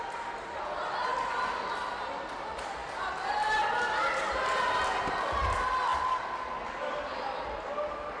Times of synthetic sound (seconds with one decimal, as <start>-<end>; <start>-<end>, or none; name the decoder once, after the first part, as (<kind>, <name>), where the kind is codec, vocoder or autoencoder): none